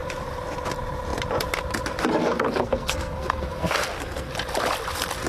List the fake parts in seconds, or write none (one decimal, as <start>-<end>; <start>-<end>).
2.2-4.3